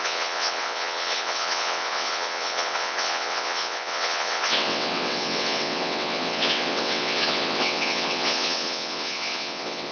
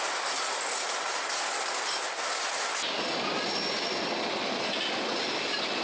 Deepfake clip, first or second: first